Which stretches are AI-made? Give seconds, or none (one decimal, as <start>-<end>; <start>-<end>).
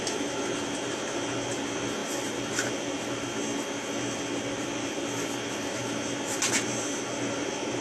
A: none